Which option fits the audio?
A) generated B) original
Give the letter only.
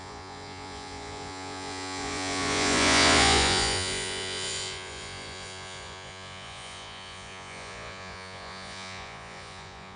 A